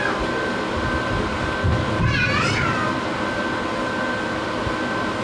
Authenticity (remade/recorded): recorded